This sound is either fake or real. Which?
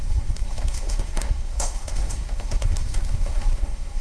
fake